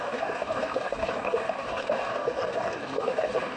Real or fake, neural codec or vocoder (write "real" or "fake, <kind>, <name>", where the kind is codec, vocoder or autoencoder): fake, codec, DAC